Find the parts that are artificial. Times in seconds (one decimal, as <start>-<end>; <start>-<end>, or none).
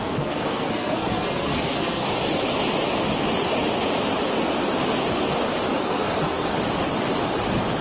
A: 0.0-2.1; 5.8-6.5